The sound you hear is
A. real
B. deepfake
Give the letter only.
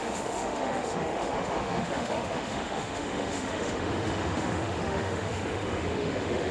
B